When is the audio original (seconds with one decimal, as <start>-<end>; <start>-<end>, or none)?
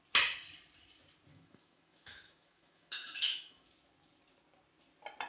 0.0-1.3; 3.7-5.3